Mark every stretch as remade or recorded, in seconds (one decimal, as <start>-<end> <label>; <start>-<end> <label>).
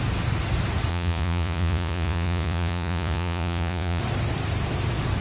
0.0-0.9 recorded; 0.9-4.0 remade; 4.0-5.2 recorded